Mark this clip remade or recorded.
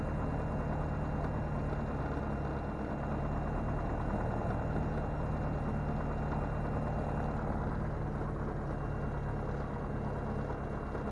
recorded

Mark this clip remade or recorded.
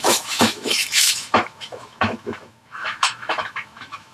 remade